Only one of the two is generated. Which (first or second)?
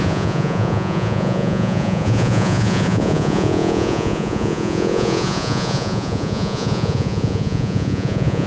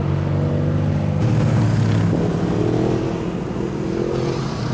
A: first